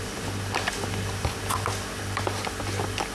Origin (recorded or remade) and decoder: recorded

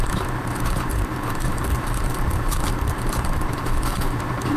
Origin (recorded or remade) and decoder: remade, vocoder, BigVGAN v2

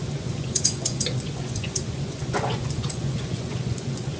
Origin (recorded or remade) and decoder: remade, vocoder, Vocos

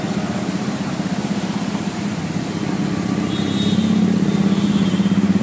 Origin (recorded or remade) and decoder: recorded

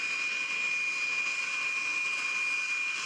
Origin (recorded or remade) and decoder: recorded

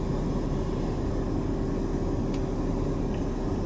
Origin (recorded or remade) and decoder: recorded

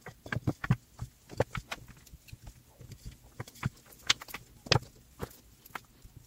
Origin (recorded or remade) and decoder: recorded